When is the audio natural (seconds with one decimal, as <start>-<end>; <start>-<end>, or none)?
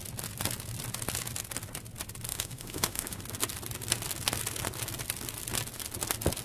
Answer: 0.0-2.3; 3.2-6.4